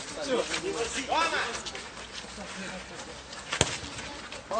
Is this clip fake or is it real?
real